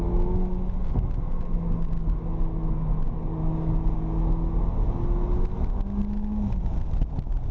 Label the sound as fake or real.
real